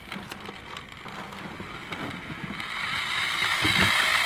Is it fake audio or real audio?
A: real